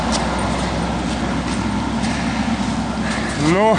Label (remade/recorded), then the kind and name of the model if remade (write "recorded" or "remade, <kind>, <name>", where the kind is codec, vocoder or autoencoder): recorded